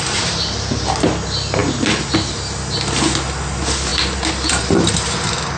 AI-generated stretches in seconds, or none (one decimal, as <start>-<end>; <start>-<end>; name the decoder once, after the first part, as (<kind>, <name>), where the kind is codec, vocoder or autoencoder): none